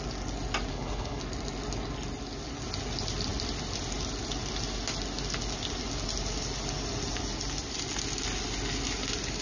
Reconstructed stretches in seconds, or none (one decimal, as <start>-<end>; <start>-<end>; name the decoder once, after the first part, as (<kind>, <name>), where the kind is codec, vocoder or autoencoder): 0.7-1.2 (codec, HILCodec)